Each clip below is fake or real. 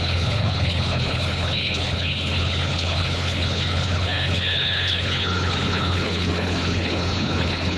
fake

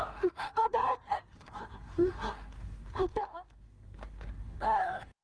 fake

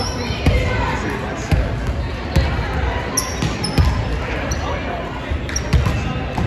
real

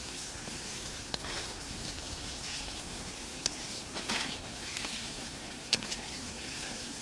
fake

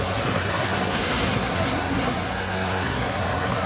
fake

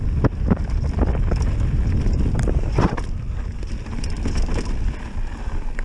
real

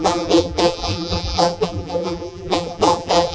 fake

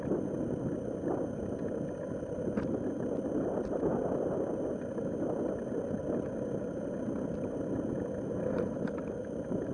real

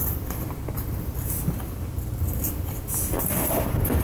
real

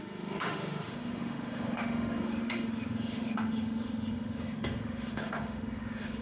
fake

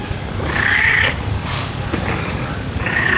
fake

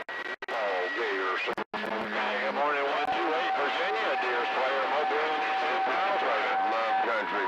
real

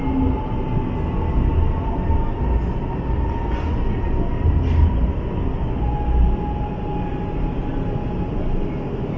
real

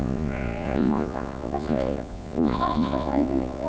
fake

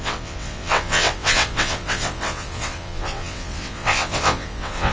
fake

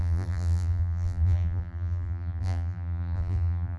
fake